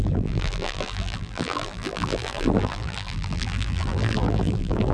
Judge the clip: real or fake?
fake